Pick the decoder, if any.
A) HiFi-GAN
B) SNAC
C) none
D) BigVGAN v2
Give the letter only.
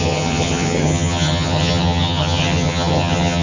A